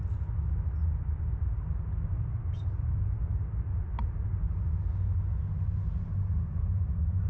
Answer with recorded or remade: recorded